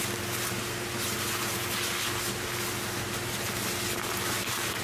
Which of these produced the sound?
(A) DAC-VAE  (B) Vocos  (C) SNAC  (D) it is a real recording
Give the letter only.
D